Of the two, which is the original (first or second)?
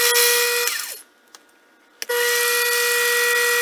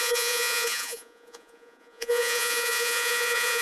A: first